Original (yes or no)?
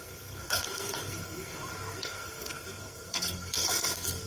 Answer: no